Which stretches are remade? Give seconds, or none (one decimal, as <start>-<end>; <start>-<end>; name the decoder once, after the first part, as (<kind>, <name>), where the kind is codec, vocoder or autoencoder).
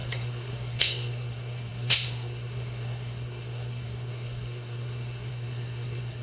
0.0-6.2 (codec, SNAC)